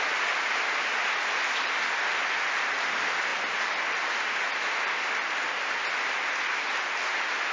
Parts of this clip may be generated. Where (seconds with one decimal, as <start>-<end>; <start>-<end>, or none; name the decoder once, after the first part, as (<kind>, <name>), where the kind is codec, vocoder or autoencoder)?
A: none